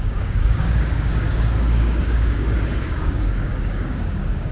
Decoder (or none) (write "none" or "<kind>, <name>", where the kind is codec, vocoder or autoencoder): codec, DAC